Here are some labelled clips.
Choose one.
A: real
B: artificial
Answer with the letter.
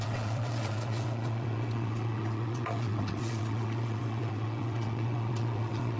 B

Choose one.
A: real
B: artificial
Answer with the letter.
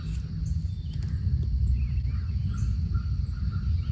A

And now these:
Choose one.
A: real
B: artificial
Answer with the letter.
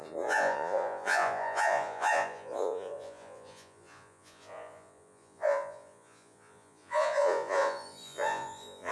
B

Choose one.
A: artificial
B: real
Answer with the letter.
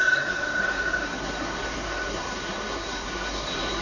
A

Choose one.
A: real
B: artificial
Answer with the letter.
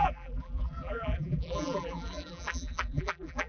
B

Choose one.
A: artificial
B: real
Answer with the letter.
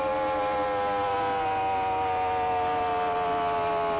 B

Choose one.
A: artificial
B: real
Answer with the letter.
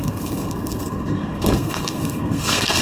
A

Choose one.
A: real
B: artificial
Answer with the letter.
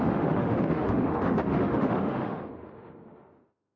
B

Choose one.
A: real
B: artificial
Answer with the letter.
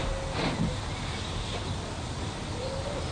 A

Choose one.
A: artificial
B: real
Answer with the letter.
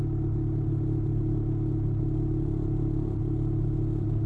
B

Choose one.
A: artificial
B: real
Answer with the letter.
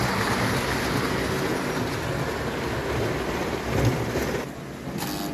B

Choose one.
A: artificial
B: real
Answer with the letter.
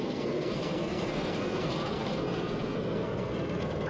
A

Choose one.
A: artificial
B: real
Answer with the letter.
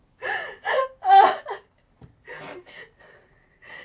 A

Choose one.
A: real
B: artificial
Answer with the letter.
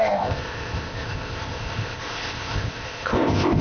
B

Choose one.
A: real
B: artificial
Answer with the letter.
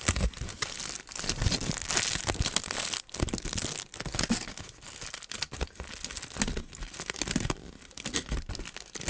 A